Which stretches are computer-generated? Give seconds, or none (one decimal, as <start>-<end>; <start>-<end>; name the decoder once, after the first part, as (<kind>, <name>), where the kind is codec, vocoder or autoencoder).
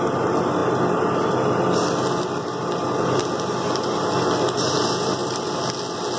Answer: none